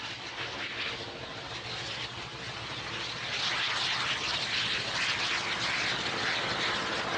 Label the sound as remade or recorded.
recorded